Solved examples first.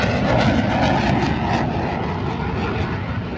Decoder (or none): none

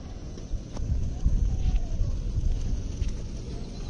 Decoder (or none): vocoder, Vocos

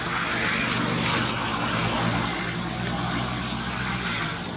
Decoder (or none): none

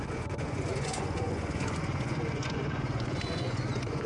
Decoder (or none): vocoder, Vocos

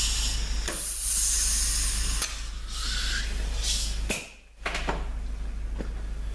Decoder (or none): none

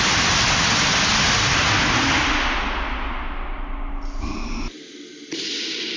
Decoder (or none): none